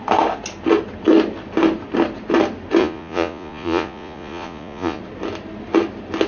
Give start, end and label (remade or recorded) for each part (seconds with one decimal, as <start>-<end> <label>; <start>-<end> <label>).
0.0-2.8 recorded; 2.8-5.0 remade; 5.0-6.3 recorded